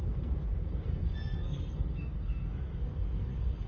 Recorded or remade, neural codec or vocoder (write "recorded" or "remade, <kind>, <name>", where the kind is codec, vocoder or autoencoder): remade, codec, SNAC